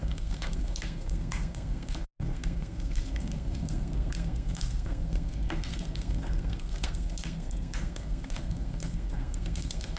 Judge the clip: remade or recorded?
remade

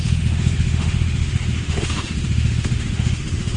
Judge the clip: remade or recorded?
remade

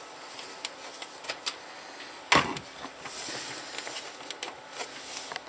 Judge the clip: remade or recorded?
recorded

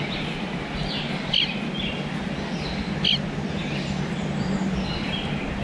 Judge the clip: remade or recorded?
recorded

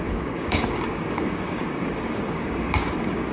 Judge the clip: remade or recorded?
remade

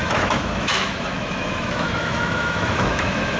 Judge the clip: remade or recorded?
remade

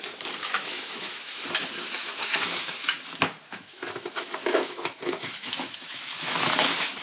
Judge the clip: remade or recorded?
remade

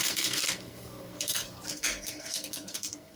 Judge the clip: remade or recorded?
remade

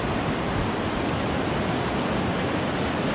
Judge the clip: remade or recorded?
recorded